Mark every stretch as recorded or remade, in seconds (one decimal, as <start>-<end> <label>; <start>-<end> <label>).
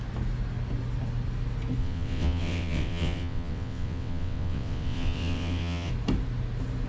0.0-1.8 recorded; 1.8-5.9 remade; 5.9-6.9 recorded